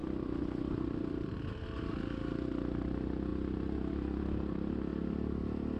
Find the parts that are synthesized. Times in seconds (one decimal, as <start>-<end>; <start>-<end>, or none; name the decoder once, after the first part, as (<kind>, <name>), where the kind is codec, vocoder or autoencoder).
0.0-1.6 (vocoder, BigVGAN v2); 4.9-5.8